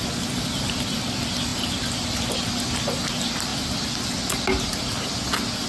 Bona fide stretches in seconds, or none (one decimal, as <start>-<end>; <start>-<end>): 0.0-5.7